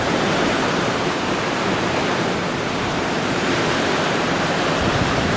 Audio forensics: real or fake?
fake